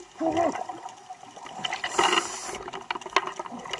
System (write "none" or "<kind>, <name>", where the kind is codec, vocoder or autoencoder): none